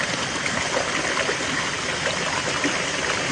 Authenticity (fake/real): real